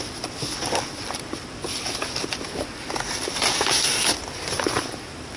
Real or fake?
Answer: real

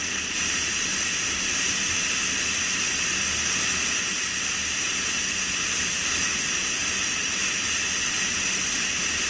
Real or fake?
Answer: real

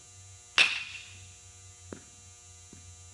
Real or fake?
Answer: real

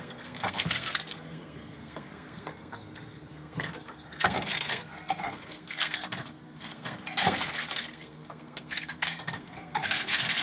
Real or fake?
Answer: fake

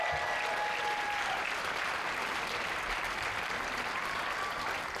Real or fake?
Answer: real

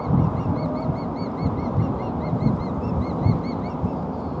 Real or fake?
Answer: real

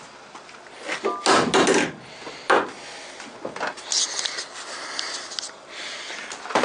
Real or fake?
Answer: real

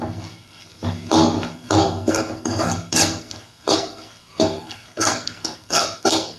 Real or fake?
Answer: fake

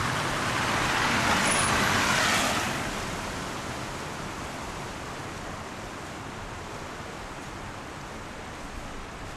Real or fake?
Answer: real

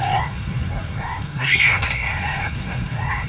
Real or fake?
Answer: fake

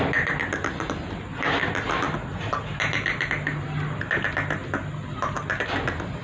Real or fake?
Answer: real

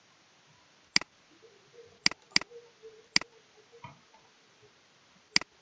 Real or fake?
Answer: real